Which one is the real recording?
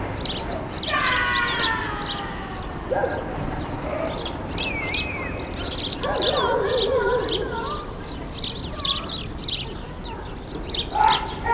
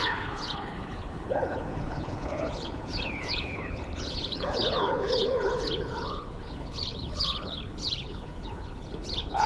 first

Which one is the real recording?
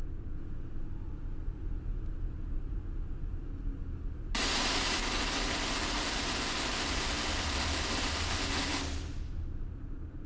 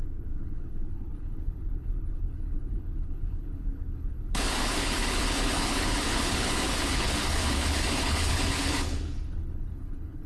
first